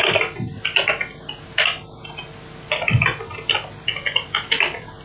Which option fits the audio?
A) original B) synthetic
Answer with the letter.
A